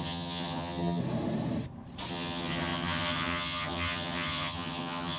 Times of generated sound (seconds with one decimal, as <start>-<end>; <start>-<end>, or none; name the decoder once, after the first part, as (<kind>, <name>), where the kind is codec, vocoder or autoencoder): 0.0-1.0 (vocoder, HiFi-GAN); 2.1-5.2

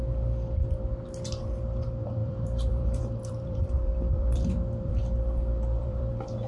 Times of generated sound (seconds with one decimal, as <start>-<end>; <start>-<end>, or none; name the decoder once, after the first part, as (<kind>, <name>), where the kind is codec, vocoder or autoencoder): 2.2-6.1 (vocoder, BigVGAN v2)